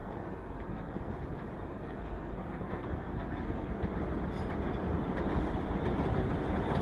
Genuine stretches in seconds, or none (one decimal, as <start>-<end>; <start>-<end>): 1.2-1.7; 3.7-6.8